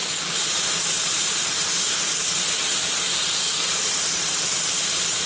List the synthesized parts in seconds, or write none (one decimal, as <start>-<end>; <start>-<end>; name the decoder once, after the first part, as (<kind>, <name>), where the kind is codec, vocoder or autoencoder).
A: 3.1-5.3 (vocoder, BigVGAN v2)